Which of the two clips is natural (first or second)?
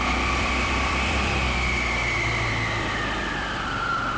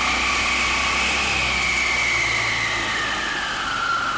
second